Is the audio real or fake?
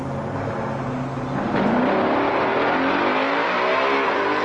real